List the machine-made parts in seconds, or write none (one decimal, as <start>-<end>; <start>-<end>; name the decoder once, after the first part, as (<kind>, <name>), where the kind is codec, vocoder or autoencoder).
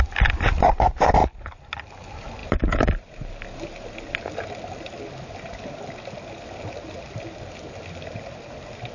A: none